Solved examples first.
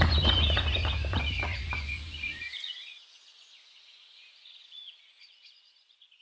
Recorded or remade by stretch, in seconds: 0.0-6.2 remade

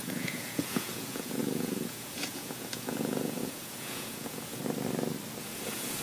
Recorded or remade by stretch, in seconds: 0.0-4.6 remade; 4.6-5.4 recorded; 5.4-6.0 remade